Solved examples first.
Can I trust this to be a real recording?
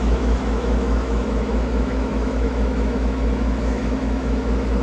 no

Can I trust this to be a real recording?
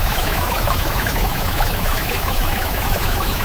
no